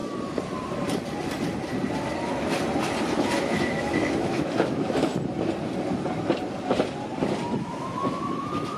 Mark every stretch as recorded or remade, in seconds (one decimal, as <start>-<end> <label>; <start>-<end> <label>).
0.0-3.4 recorded; 3.4-5.1 remade; 5.1-7.6 recorded; 7.6-8.8 remade